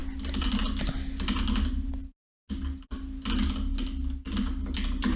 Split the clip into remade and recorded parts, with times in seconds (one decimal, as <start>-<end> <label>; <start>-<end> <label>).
0.0-5.2 recorded

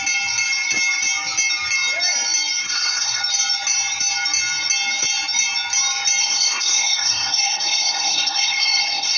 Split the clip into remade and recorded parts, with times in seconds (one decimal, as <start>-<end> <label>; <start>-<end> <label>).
0.0-2.6 recorded; 2.6-3.2 remade; 3.2-6.2 recorded; 6.2-9.2 remade

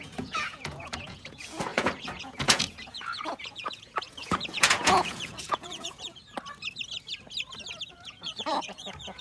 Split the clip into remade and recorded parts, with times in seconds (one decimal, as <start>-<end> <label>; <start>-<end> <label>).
0.0-6.2 remade; 6.2-7.9 recorded; 7.9-9.2 remade

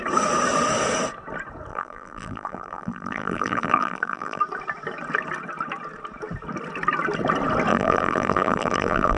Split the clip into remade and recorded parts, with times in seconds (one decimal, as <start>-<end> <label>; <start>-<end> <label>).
0.0-1.7 recorded; 1.7-4.4 remade; 4.4-7.7 recorded; 7.7-9.2 remade

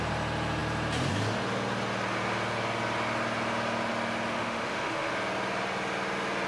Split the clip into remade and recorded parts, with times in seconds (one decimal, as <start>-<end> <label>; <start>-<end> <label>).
0.0-4.3 recorded; 4.3-5.1 remade; 5.1-6.5 recorded

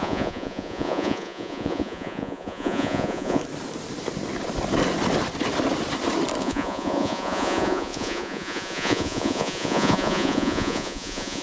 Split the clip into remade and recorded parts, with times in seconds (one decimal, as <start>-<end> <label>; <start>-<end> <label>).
0.0-3.4 remade; 3.4-6.4 recorded; 6.4-11.4 remade